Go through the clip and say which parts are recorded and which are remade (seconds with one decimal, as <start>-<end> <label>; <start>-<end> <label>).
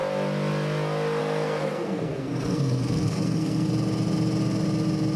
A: 0.0-1.2 recorded; 1.2-3.7 remade; 3.7-5.2 recorded